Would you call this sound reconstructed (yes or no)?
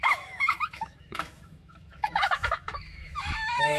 yes